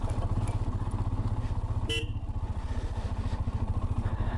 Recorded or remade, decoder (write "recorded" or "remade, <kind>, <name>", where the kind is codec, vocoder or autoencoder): recorded